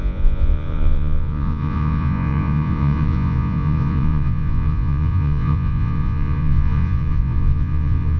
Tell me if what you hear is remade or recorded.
remade